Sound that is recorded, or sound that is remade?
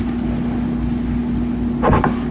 recorded